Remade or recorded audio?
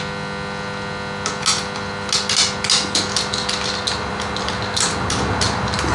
recorded